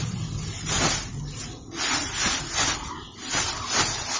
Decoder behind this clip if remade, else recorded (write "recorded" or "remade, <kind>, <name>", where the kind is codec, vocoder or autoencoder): recorded